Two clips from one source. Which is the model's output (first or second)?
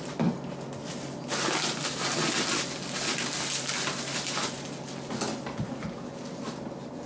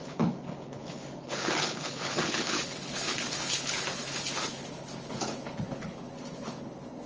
second